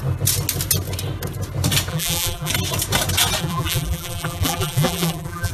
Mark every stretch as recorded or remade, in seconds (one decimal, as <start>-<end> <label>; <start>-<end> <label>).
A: 0.0-1.9 recorded; 1.9-2.5 remade; 2.5-3.4 recorded; 3.4-5.5 remade